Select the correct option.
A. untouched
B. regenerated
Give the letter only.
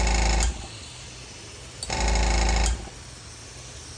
A